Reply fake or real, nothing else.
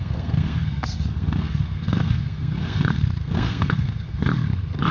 fake